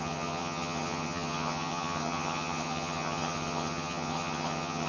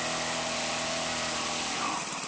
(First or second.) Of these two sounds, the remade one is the first